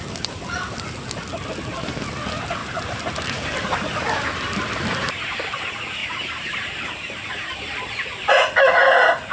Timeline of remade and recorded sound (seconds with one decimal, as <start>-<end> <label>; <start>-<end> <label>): 0.0-2.6 recorded; 2.6-4.4 remade; 4.4-6.0 recorded; 6.0-7.8 remade; 7.8-9.3 recorded